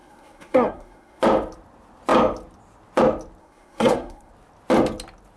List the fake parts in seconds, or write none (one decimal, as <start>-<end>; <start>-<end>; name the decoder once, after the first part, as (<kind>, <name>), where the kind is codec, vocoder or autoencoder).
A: 0.0-1.2 (codec, SNAC); 3.4-4.3